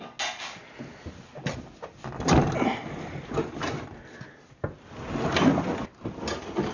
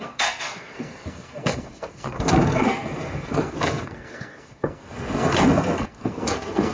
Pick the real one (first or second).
first